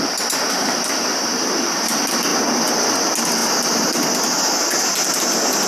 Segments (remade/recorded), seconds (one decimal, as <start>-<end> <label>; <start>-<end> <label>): 0.0-5.7 recorded